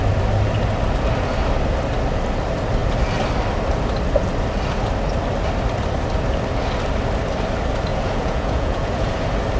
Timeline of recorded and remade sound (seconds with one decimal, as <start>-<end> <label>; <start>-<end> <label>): 0.0-7.9 recorded; 7.9-9.1 remade; 9.1-9.6 recorded